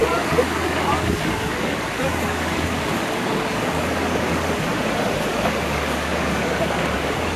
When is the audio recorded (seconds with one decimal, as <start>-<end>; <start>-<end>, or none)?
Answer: 4.7-5.2